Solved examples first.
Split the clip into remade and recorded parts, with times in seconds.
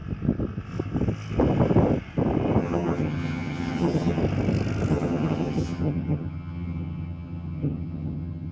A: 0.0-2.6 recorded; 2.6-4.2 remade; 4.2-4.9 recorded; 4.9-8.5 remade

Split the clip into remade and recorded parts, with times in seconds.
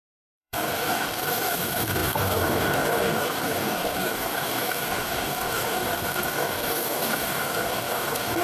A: 0.0-8.4 remade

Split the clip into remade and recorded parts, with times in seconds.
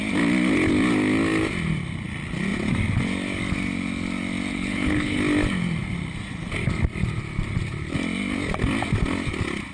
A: 0.0-4.5 recorded; 4.5-5.2 remade; 5.2-9.7 recorded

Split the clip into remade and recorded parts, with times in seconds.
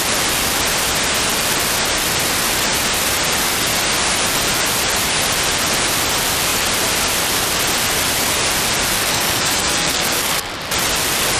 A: 0.0-9.0 recorded; 9.0-10.5 remade; 10.5-11.4 recorded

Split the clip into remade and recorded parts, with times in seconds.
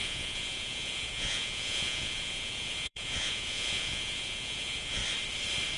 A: 0.0-5.0 remade; 5.0-5.8 recorded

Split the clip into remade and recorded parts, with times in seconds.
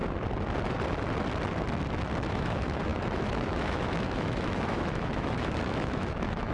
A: 0.0-2.3 recorded; 2.3-6.5 remade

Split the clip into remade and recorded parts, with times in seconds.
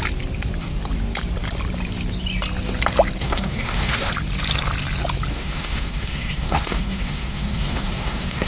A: 0.0-3.2 recorded; 3.2-4.1 remade; 4.1-5.3 recorded; 5.3-8.5 remade